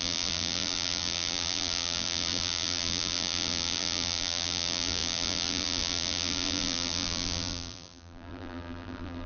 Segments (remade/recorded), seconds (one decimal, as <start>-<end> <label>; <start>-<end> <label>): 0.0-9.3 remade